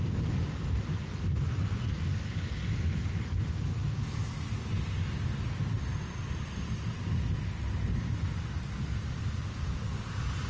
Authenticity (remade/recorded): recorded